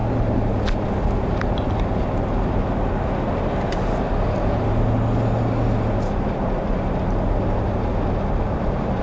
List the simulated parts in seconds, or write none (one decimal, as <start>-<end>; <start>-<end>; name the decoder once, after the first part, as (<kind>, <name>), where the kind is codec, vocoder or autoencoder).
none